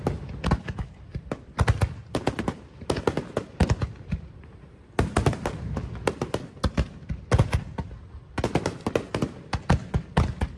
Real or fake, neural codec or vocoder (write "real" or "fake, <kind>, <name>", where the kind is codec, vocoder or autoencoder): real